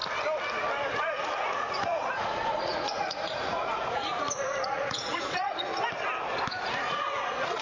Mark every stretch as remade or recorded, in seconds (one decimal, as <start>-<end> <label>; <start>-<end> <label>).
0.0-0.9 recorded; 0.9-5.7 remade; 5.7-6.6 recorded; 6.6-7.6 remade